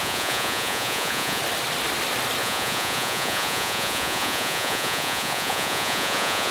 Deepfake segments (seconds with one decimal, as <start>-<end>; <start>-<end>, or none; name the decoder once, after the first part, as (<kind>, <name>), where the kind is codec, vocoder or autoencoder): 0.0-1.4 (vocoder, Vocos); 2.4-6.5